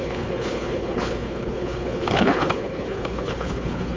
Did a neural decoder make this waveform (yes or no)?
yes